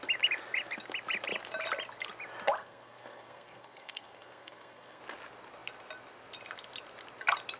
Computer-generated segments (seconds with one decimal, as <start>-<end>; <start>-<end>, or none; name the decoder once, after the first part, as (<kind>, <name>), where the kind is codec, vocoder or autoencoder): 2.6-5.0 (codec, SNAC)